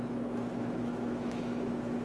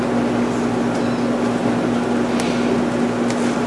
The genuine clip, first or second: second